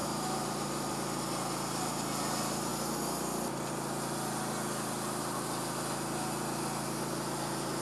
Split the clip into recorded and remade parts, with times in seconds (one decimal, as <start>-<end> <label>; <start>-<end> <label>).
0.0-0.9 remade; 0.9-7.8 recorded

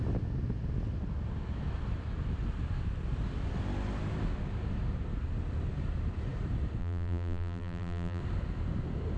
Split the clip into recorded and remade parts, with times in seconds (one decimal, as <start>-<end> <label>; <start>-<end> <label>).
0.0-6.8 recorded; 6.8-8.2 remade; 8.2-9.2 recorded

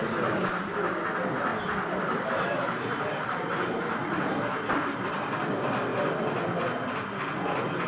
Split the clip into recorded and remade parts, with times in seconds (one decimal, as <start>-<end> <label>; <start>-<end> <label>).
0.0-1.5 recorded; 1.5-5.3 remade; 5.3-7.9 recorded